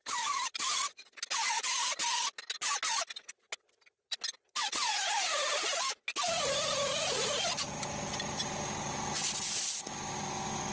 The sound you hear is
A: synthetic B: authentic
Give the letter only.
B